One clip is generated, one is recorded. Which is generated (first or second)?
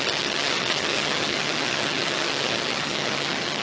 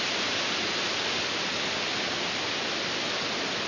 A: first